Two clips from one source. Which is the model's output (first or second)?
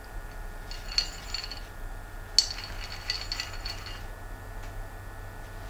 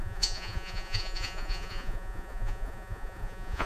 second